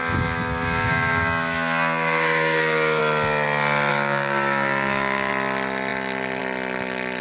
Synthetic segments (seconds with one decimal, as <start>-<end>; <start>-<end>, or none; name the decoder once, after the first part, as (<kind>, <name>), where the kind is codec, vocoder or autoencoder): 0.0-3.0 (codec, DAC); 3.9-5.3